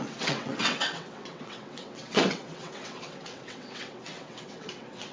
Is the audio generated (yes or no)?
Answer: yes